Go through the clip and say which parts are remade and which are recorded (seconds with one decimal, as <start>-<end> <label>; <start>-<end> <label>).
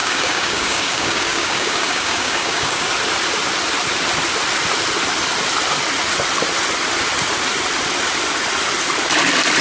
0.0-2.9 remade; 2.9-9.6 recorded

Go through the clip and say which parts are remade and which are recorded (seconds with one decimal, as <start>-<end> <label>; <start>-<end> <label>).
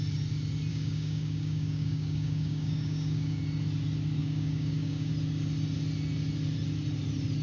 0.0-0.7 recorded; 0.7-3.4 remade; 3.4-4.2 recorded; 4.2-5.1 remade; 5.1-7.4 recorded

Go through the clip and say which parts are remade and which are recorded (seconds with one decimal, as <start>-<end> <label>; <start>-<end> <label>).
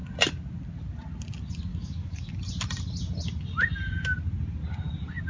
0.0-1.7 recorded; 1.7-2.3 remade; 2.3-5.3 recorded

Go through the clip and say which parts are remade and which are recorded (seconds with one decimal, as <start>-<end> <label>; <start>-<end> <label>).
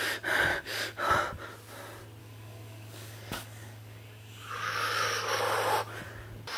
0.0-0.5 recorded; 0.5-1.1 remade; 1.1-2.2 recorded; 2.2-5.4 remade; 5.4-6.6 recorded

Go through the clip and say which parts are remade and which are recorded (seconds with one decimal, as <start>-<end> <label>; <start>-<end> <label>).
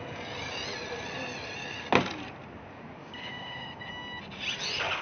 0.0-3.0 recorded; 3.0-3.8 remade; 3.8-5.0 recorded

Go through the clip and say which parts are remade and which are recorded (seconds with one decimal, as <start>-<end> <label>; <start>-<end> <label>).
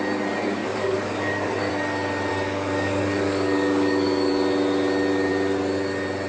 0.0-0.6 recorded; 0.6-1.7 remade; 1.7-2.3 recorded; 2.3-4.3 remade; 4.3-6.3 recorded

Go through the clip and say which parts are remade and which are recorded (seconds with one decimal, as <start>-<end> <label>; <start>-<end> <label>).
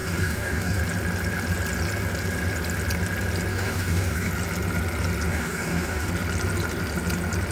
0.0-0.8 remade; 0.8-3.5 recorded; 3.5-4.3 remade; 4.3-5.3 recorded; 5.3-6.1 remade; 6.1-7.5 recorded